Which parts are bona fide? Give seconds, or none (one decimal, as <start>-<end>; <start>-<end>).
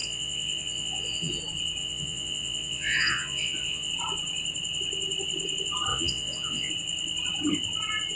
1.4-1.8; 3.9-5.9; 6.7-8.2